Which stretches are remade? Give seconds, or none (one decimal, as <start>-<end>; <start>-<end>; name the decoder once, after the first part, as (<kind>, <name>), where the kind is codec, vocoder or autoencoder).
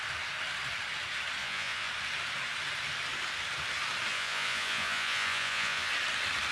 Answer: 1.4-1.9 (vocoder, Vocos); 4.1-5.9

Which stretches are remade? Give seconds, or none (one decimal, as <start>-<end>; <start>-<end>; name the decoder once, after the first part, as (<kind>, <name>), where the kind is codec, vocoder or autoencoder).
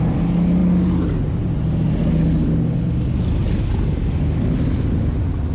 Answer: none